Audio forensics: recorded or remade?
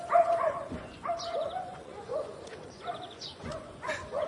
remade